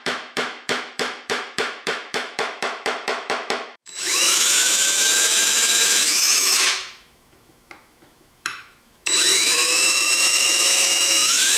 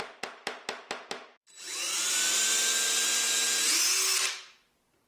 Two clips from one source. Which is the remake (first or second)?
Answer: first